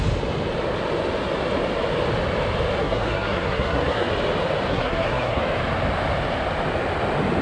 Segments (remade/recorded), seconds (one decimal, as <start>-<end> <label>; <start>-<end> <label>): 0.0-2.8 recorded; 2.8-4.1 remade; 4.1-4.7 recorded; 4.7-5.4 remade; 5.4-7.4 recorded